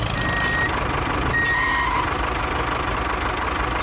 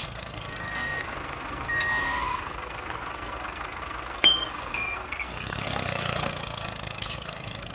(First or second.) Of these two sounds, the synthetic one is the second